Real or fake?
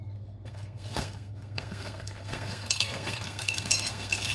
fake